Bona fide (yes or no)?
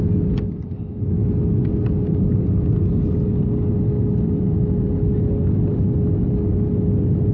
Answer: yes